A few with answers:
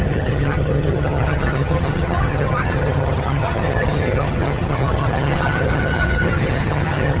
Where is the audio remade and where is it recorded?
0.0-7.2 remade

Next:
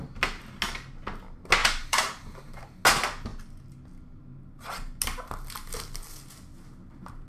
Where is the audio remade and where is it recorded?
0.0-1.6 recorded; 1.6-2.6 remade; 2.6-7.3 recorded

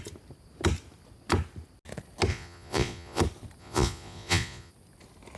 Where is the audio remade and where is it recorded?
0.0-2.3 recorded; 2.3-3.2 remade; 3.2-3.6 recorded; 3.6-4.7 remade; 4.7-5.4 recorded

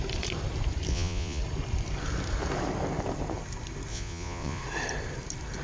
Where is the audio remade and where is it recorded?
0.0-0.9 recorded; 0.9-1.4 remade; 1.4-3.9 recorded; 3.9-4.6 remade; 4.6-5.6 recorded

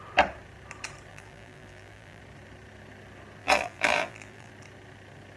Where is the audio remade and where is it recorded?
0.0-1.1 recorded; 1.1-2.2 remade; 2.2-3.4 recorded; 3.4-4.5 remade; 4.5-5.4 recorded

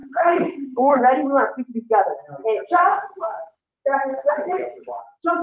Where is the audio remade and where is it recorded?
0.0-1.0 remade; 1.0-2.9 recorded; 2.9-3.6 remade; 3.6-4.1 recorded; 4.1-5.0 remade; 5.0-5.4 recorded